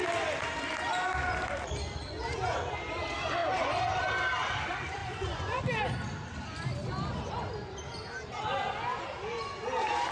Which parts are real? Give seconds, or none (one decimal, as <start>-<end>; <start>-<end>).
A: 0.0-5.0; 5.6-10.1